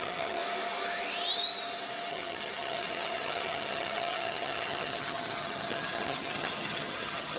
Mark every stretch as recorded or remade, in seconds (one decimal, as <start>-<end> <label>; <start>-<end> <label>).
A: 0.0-0.4 remade; 0.4-2.1 recorded; 2.1-7.4 remade